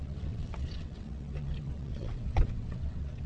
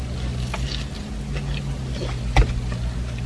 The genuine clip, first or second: second